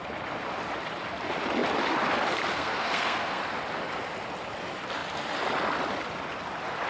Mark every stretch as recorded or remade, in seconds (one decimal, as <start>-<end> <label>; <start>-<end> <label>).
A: 0.0-2.5 recorded; 2.5-3.4 remade; 3.4-6.9 recorded